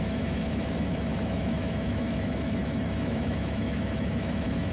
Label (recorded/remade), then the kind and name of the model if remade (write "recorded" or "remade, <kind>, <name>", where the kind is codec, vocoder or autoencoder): remade, autoencoder, DAC-VAE